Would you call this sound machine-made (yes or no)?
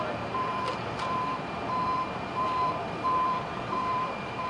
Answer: yes